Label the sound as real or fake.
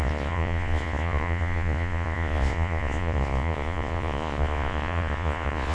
fake